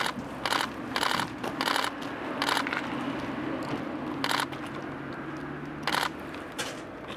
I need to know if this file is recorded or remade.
recorded